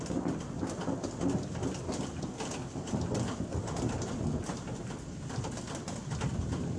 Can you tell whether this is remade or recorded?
recorded